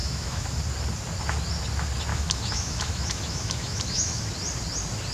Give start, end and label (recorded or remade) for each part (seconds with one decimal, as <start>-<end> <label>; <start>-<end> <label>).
0.0-0.6 remade; 0.6-2.1 recorded; 2.1-4.2 remade; 4.2-5.1 recorded